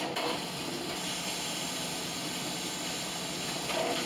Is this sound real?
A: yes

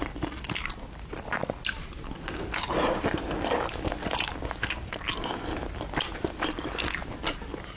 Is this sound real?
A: yes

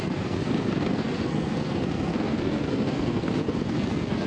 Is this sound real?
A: no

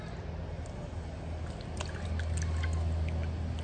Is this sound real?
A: yes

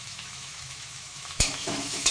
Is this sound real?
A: no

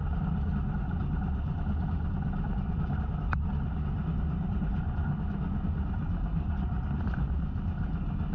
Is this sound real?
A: yes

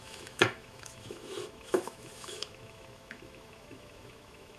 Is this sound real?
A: no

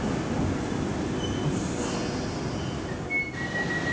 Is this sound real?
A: yes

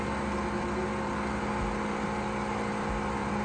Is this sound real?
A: yes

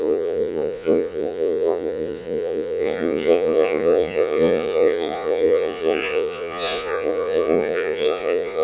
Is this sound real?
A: no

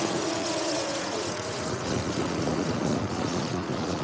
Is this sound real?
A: no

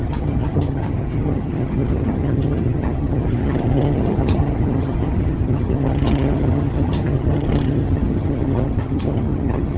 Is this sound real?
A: no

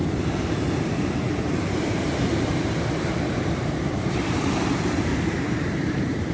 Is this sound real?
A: no